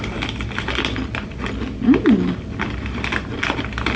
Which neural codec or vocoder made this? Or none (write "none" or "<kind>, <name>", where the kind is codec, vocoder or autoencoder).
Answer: none